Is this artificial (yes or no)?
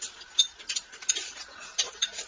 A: no